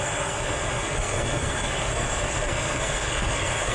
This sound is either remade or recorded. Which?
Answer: remade